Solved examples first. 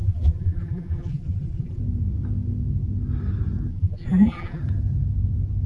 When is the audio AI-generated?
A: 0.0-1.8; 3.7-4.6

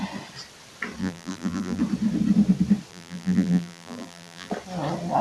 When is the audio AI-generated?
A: 1.0-1.8; 2.9-4.5

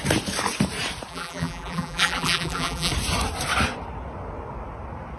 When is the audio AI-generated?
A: 1.1-2.9